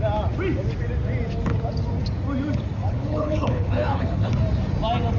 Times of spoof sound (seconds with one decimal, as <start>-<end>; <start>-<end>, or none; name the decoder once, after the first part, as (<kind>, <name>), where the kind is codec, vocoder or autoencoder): 2.8-4.3 (codec, HILCodec)